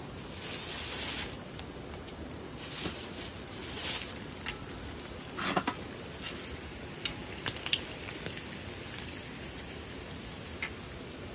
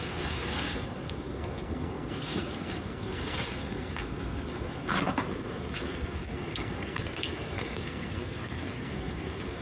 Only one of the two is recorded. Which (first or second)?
first